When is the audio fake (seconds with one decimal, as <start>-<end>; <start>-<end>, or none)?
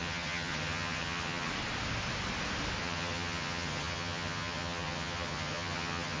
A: 0.0-1.5; 2.8-6.2